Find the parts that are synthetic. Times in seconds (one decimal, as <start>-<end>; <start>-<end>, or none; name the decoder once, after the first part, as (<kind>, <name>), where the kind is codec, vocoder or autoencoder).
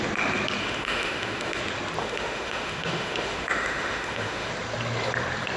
0.6-1.6 (autoencoder, DAC-VAE); 2.0-4.5